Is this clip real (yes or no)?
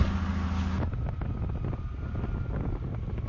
yes